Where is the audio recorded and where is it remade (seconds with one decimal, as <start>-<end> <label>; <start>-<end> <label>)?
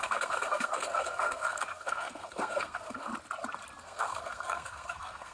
0.0-3.1 remade; 3.1-3.8 recorded; 3.8-5.3 remade